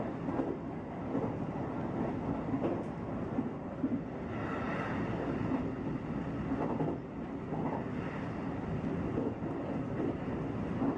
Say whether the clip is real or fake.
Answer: real